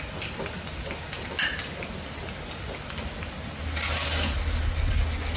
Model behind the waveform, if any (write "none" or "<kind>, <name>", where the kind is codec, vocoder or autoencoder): none